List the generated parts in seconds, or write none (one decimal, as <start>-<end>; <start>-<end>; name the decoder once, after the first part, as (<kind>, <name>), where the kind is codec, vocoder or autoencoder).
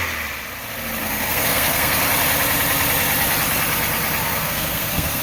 1.0-2.0 (codec, SNAC); 4.2-5.2